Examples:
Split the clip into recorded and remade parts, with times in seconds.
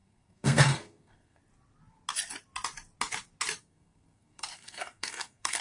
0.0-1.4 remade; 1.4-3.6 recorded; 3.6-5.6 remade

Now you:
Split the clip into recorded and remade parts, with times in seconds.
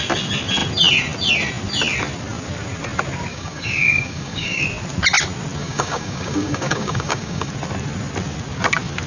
0.0-3.3 recorded; 3.3-4.6 remade; 4.6-5.6 recorded; 5.6-7.5 remade; 7.5-9.1 recorded